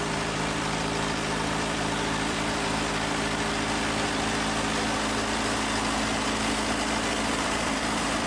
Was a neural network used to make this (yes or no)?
yes